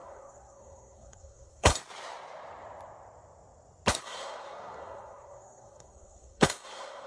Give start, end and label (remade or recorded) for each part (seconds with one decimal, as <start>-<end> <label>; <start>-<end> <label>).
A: 0.0-1.7 remade; 1.7-4.0 recorded; 4.0-7.1 remade